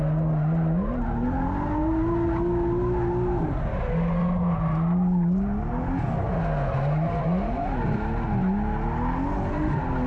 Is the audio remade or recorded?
recorded